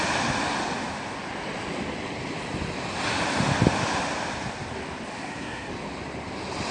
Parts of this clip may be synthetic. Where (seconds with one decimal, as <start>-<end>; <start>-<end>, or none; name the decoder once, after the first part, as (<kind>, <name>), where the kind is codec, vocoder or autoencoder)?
5.1-5.7 (codec, SNAC)